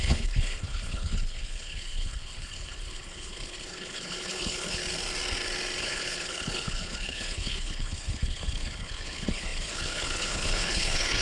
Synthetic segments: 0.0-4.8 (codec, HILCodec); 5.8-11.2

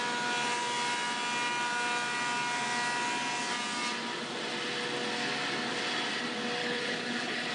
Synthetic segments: 6.6-7.5 (codec, HILCodec)

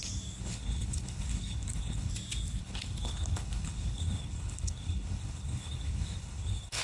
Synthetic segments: 0.4-2.1 (codec, HILCodec); 2.6-6.8

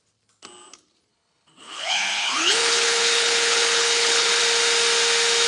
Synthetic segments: 1.1-4.4 (codec, HILCodec)

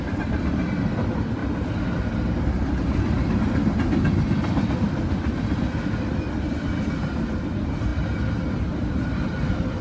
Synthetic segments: none

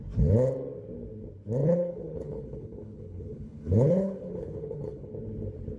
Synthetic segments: 1.6-5.1 (codec, HILCodec)